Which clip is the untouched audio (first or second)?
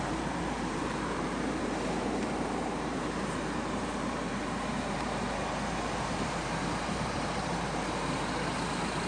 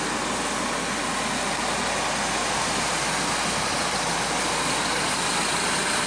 second